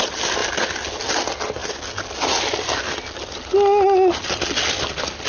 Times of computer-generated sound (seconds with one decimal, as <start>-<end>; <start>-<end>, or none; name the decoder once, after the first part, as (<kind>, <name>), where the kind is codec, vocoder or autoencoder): none